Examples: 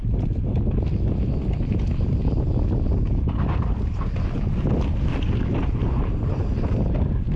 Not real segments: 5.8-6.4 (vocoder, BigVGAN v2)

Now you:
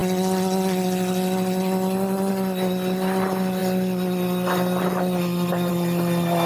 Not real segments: none

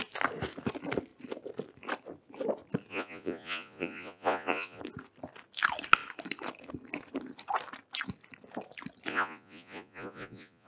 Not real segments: 2.9-4.8 (vocoder, Vocos); 9.1-10.7

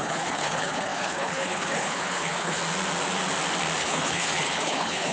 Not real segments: 0.0-2.6 (codec, HILCodec); 3.8-5.1

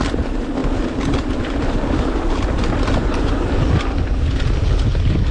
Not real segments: 3.0-3.5 (vocoder, BigVGAN v2)

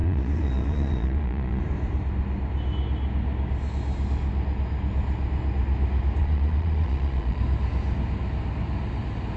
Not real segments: 0.0-1.6 (vocoder, Vocos); 6.2-7.4

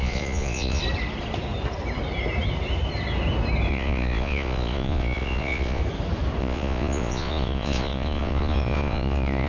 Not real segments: 0.0-0.8 (vocoder, Vocos); 3.7-5.8; 6.4-9.5